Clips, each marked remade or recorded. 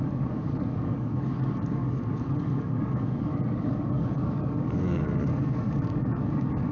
remade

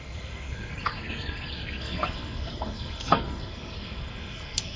remade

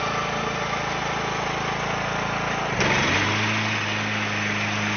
recorded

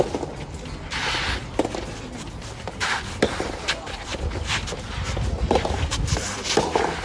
recorded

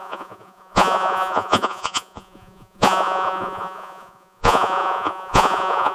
remade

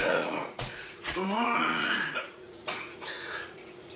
remade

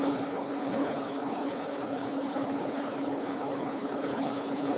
remade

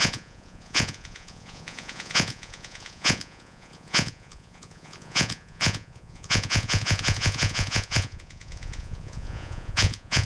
remade